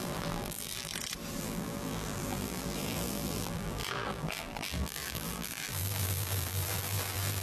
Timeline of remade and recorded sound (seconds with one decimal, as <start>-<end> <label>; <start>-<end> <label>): 0.0-0.9 remade; 0.9-1.4 recorded; 1.4-7.4 remade

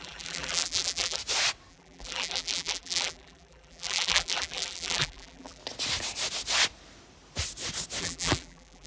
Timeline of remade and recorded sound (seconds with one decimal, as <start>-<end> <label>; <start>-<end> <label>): 0.0-1.2 remade; 1.2-1.7 recorded; 1.7-5.6 remade; 5.6-8.0 recorded; 8.0-8.9 remade

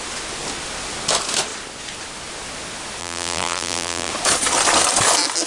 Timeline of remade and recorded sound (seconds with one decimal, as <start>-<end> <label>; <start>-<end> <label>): 0.0-3.0 recorded; 3.0-4.1 remade; 4.1-5.5 recorded

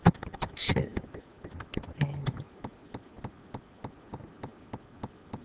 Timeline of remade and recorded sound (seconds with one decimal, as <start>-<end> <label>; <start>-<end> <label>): 0.0-5.4 recorded